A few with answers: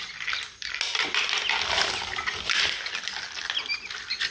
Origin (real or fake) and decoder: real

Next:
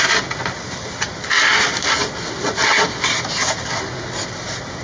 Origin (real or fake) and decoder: real